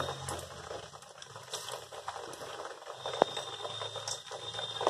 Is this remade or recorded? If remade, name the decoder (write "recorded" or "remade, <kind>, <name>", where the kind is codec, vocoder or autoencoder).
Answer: recorded